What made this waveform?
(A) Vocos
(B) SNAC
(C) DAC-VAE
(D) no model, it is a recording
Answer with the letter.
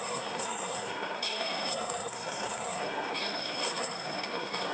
B